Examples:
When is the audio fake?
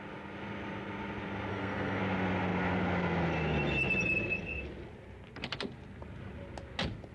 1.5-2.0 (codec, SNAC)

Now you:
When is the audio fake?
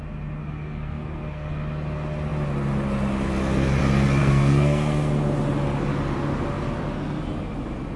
0.4-1.5 (codec, SNAC); 4.2-5.1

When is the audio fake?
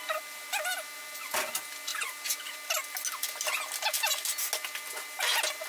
none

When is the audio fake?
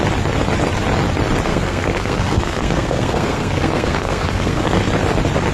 1.5-4.8 (codec, SNAC)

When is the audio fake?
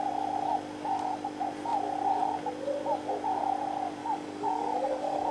4.0-5.3 (codec, DAC)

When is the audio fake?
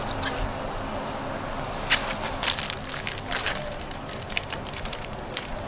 3.4-5.7 (vocoder, BigVGAN v2)